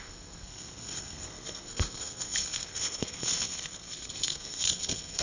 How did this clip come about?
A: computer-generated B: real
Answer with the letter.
A